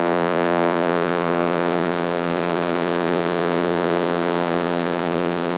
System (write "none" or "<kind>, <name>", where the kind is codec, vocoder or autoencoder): vocoder, Vocos